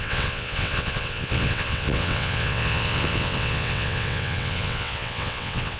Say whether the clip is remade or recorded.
remade